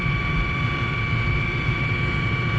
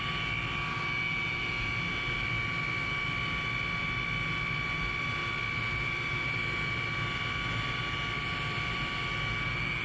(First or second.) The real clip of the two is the second